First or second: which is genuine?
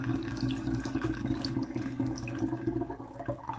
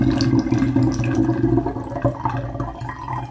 second